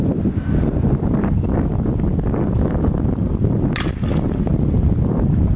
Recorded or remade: recorded